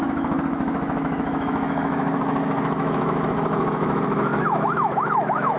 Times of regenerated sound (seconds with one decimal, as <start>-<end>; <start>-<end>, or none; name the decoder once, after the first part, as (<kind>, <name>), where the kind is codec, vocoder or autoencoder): 0.0-5.6 (autoencoder, DAC-VAE)